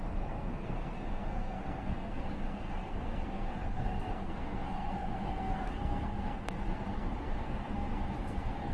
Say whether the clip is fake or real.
fake